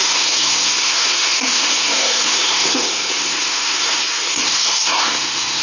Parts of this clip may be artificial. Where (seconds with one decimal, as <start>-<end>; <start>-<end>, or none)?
0.0-5.6